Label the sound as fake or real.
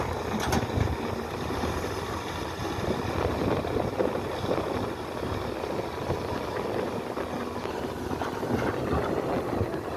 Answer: real